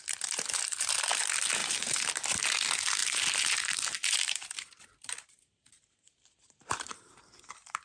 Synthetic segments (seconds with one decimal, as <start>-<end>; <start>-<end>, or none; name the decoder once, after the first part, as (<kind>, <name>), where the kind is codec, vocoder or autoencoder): 1.6-2.1 (vocoder, BigVGAN v2); 3.0-7.2